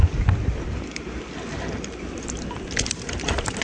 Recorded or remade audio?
recorded